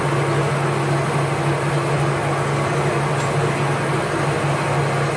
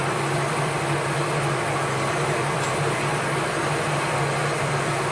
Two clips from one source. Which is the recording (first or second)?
first